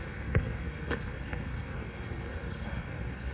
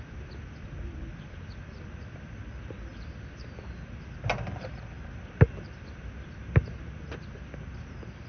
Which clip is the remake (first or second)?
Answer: first